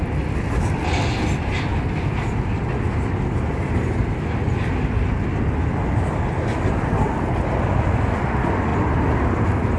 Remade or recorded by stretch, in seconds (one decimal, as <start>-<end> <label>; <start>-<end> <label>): 0.0-9.8 recorded